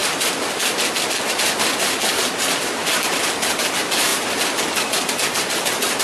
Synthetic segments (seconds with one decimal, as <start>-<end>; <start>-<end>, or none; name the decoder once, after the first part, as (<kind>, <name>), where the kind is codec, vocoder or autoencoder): none